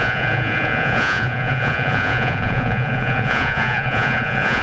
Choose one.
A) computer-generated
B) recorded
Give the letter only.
A